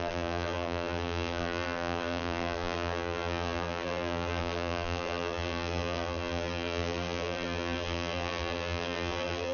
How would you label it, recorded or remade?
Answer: remade